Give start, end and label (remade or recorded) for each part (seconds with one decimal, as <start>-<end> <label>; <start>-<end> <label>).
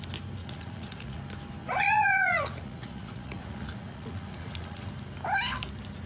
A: 0.0-0.4 recorded; 0.4-1.2 remade; 1.2-1.6 recorded; 1.6-4.9 remade; 4.9-6.1 recorded